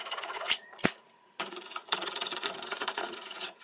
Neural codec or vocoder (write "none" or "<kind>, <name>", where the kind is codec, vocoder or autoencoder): vocoder, Vocos